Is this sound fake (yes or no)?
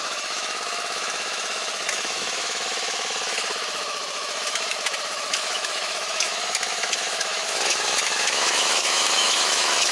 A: yes